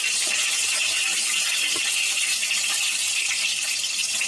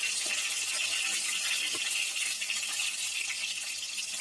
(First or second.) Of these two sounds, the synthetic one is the first